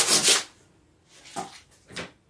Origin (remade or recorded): recorded